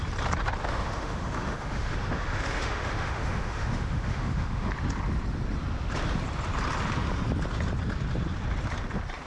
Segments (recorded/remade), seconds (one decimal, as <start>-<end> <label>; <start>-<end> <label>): 0.0-0.6 recorded; 0.6-4.7 remade; 4.7-9.3 recorded

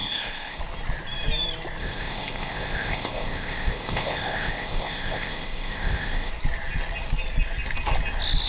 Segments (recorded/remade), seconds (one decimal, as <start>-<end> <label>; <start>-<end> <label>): 0.0-0.6 remade; 0.6-1.8 recorded; 1.8-6.3 remade; 6.3-8.5 recorded

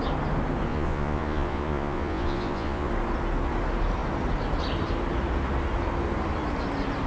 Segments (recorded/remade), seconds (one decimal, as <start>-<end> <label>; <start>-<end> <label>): 0.0-0.7 recorded; 0.7-2.9 remade; 2.9-7.1 recorded

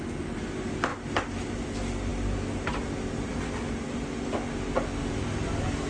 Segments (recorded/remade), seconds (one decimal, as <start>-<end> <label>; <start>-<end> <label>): 0.0-5.9 recorded

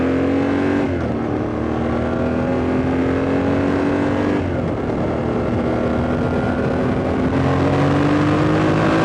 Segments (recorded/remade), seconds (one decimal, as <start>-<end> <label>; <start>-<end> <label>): 0.0-9.0 recorded